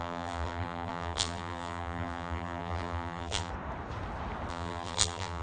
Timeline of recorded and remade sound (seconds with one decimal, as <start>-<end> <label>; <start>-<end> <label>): 0.0-3.5 remade; 3.5-4.5 recorded; 4.5-5.4 remade